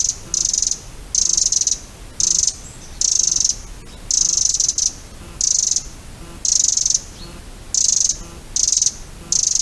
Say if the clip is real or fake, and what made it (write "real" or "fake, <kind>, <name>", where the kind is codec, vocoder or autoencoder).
real